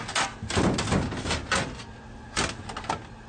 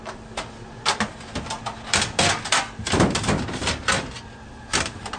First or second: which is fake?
second